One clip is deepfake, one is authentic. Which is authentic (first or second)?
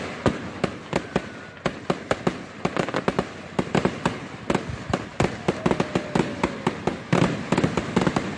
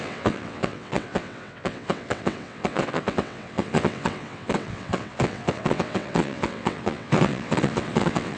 first